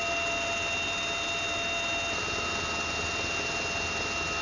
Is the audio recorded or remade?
recorded